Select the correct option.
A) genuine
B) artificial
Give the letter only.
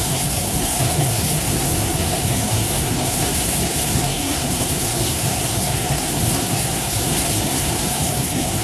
B